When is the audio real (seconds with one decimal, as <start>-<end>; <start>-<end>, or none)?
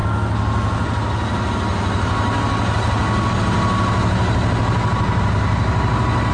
0.0-6.3